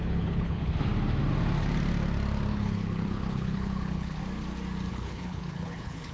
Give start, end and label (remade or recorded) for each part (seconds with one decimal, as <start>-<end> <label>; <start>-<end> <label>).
0.0-0.9 remade; 0.9-2.5 recorded; 2.5-4.2 remade; 4.2-4.9 recorded; 4.9-6.1 remade